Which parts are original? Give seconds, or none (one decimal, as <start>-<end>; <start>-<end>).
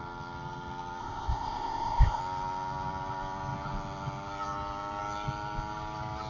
0.0-1.0; 2.2-6.3